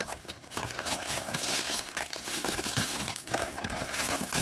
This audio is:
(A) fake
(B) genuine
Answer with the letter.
A